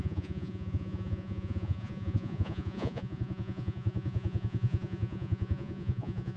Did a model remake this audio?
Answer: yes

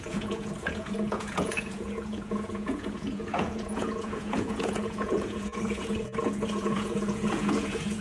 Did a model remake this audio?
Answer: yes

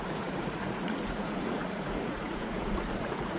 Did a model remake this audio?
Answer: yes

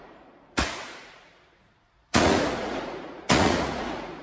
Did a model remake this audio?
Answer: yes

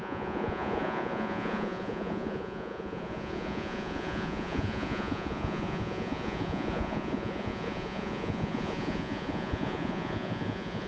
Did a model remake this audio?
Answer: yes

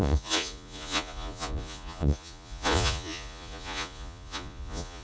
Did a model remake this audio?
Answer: yes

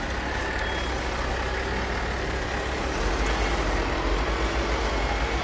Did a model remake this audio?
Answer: no